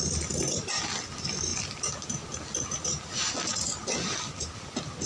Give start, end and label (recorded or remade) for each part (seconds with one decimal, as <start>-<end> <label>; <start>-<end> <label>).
0.0-5.1 recorded